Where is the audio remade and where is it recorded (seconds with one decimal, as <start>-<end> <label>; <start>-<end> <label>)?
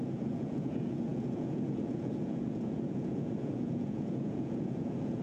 0.0-5.2 remade